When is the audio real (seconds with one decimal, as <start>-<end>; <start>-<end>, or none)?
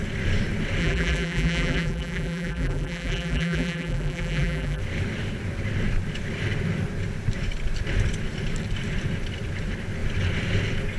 0.0-0.8; 4.8-11.0